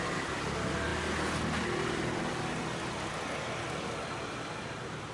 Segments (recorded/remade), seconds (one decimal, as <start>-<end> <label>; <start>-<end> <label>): 0.0-5.1 recorded